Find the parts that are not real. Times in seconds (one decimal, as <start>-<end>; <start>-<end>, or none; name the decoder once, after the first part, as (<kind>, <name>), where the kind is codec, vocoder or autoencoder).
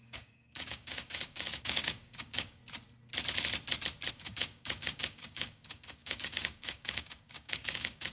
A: 0.0-2.6 (codec, DAC); 4.1-8.1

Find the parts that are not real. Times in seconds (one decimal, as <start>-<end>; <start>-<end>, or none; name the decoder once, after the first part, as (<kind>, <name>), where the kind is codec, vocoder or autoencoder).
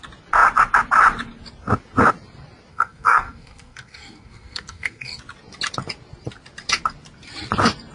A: 2.7-5.2 (codec, SNAC)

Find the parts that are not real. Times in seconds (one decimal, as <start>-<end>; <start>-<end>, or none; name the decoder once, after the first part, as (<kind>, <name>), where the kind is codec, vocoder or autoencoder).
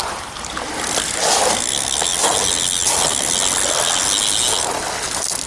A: none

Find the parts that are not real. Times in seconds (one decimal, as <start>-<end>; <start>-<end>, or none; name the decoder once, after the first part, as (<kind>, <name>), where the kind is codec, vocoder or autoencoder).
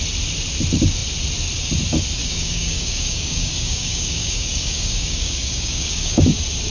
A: 2.2-6.2 (codec, DAC)